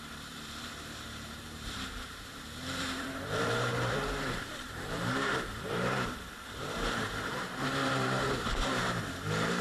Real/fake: fake